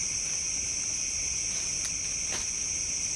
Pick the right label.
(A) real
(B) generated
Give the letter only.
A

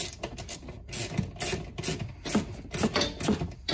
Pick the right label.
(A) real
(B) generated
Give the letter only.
A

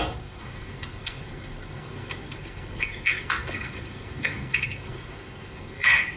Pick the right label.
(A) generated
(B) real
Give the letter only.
A